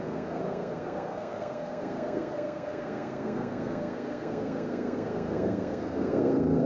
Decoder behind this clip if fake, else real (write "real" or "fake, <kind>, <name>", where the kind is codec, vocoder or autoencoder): fake, codec, SNAC